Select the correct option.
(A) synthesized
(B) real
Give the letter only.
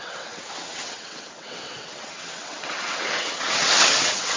A